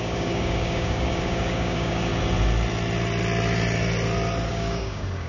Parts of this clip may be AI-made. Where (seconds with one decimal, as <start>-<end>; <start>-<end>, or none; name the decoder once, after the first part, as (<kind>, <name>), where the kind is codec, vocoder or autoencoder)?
0.0-2.1 (codec, DAC); 4.5-5.3